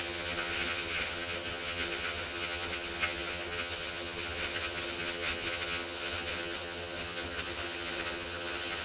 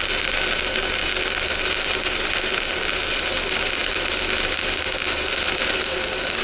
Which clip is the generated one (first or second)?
first